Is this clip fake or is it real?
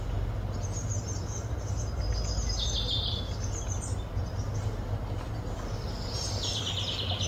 real